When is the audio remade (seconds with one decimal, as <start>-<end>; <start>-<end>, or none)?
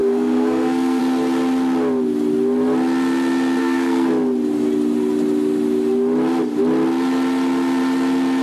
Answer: 0.0-1.0; 3.6-4.1